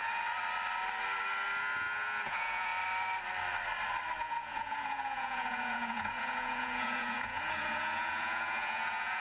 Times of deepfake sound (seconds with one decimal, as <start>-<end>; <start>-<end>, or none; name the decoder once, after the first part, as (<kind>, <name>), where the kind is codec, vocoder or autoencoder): 1.6-2.7 (vocoder, Vocos); 4.2-9.2